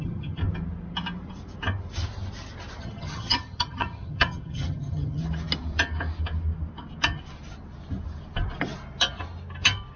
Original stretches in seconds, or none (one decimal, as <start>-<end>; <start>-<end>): 0.4-2.8; 5.2-10.0